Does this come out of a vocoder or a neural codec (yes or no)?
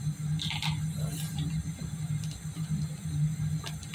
no